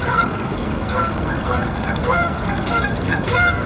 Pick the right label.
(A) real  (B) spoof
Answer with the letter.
B